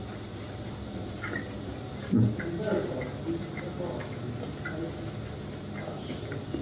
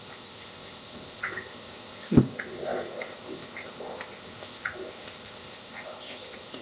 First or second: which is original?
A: first